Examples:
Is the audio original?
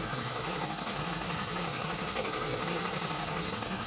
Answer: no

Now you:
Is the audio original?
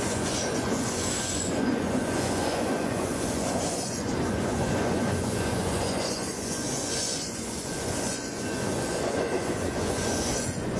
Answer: no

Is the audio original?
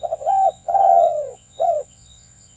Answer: no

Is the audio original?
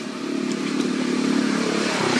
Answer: no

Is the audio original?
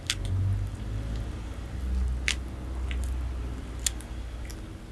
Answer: yes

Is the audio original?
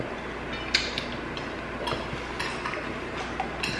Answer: yes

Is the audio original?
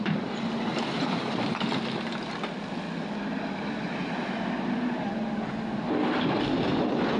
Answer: yes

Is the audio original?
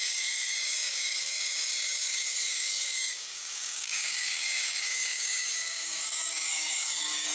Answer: no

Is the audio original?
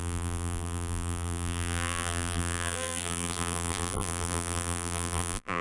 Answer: no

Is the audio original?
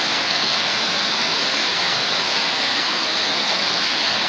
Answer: no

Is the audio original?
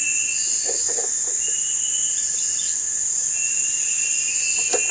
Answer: yes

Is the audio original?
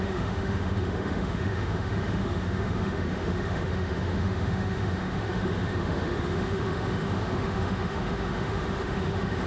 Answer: no